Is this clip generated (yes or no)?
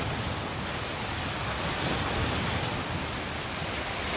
no